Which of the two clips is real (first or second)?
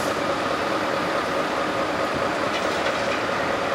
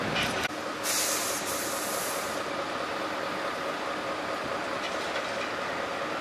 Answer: second